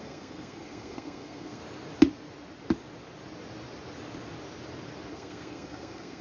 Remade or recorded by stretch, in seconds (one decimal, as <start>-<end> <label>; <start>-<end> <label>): 0.0-1.6 remade; 1.6-5.1 recorded; 5.1-6.2 remade